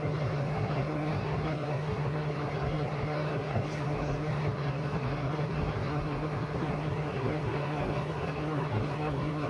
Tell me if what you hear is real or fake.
fake